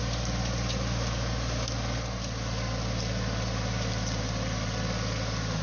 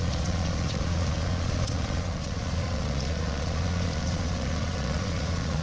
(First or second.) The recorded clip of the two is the first